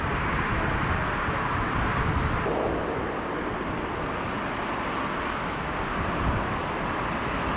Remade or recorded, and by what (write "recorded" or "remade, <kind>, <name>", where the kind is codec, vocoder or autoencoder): recorded